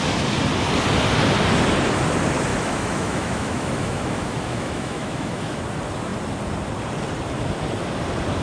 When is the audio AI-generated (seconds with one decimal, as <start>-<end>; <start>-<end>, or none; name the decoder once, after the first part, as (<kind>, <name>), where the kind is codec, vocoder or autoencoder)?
2.5-5.6 (autoencoder, DAC-VAE)